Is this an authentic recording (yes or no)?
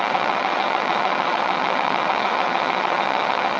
no